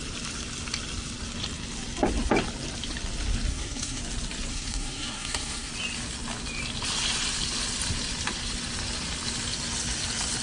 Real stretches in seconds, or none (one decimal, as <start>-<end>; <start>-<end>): 0.0-3.5; 4.0-4.5; 5.7-10.4